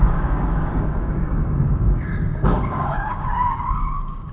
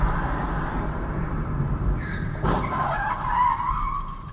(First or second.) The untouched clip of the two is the second